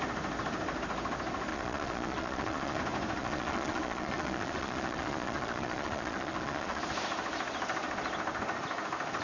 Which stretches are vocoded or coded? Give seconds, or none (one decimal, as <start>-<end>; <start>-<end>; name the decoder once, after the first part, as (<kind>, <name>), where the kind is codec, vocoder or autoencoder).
1.5-2.8 (vocoder, Vocos); 3.2-6.8